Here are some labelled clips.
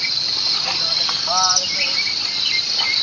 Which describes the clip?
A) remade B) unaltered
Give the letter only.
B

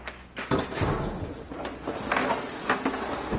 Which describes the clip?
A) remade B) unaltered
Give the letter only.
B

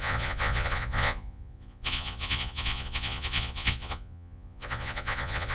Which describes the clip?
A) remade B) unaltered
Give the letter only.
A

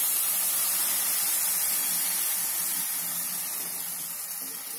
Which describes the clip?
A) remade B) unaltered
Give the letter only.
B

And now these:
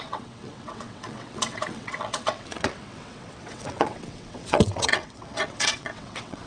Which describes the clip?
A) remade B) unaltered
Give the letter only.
A